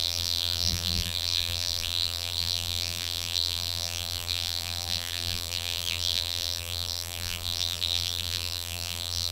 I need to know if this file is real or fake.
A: fake